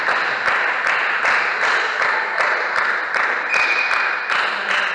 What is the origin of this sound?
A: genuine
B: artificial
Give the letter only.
A